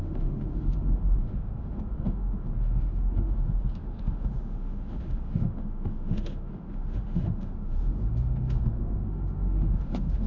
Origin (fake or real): fake